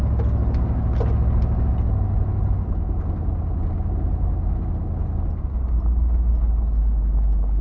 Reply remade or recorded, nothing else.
recorded